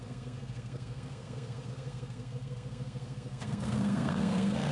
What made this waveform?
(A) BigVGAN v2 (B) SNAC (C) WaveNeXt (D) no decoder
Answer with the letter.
B